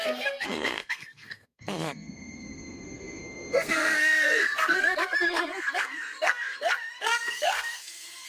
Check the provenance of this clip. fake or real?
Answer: fake